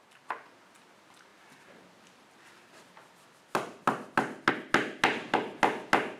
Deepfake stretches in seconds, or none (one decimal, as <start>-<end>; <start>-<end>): none